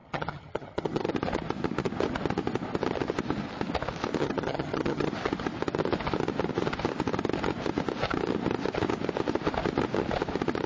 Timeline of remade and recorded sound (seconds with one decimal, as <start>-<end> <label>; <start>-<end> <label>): 0.0-1.1 remade; 1.1-4.2 recorded; 4.2-5.1 remade; 5.1-10.7 recorded